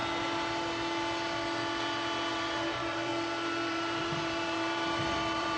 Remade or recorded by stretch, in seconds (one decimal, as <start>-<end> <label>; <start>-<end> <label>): 0.0-2.3 recorded; 2.3-3.1 remade; 3.1-3.7 recorded; 3.7-5.6 remade